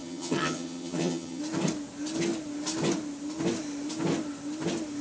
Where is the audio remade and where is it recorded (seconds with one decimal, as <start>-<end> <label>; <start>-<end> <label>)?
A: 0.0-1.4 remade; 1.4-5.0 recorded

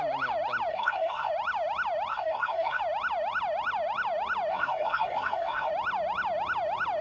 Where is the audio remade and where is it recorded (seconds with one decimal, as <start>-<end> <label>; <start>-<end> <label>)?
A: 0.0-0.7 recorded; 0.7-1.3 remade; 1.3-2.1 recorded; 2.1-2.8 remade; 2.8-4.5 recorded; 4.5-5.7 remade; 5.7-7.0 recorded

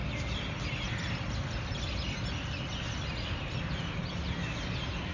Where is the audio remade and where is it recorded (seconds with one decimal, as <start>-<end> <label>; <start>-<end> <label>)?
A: 0.0-5.1 recorded

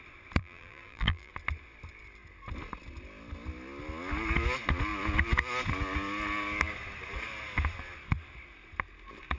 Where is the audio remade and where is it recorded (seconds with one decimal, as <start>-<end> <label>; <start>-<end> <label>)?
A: 0.0-0.4 recorded; 0.4-1.3 remade; 1.3-9.4 recorded

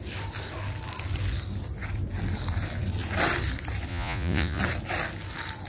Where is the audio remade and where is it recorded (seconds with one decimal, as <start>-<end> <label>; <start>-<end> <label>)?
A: 0.0-3.9 recorded; 3.9-4.6 remade; 4.6-5.7 recorded